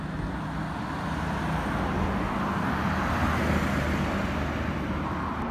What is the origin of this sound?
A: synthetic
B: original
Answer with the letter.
B